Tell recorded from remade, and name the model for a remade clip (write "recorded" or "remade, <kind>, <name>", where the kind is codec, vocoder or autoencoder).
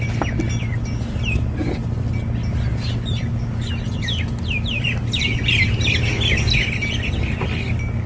recorded